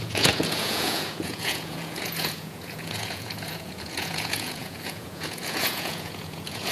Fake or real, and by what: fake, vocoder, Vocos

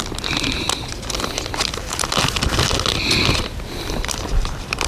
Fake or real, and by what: real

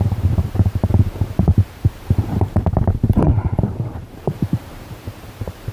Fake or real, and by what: fake, vocoder, BigVGAN v2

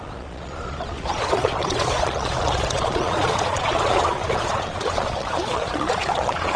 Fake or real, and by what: fake, vocoder, Vocos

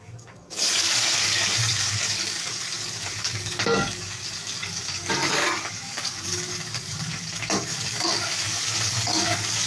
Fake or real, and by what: fake, codec, DAC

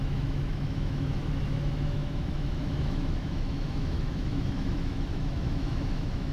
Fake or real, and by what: fake, autoencoder, DAC-VAE